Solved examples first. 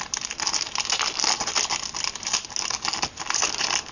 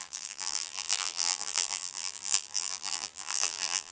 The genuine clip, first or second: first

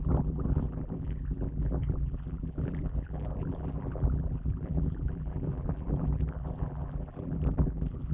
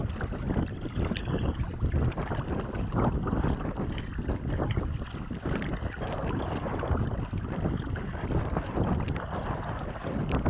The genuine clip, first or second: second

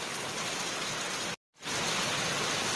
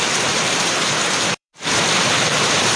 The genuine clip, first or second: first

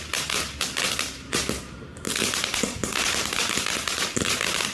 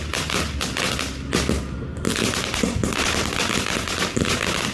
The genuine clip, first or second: second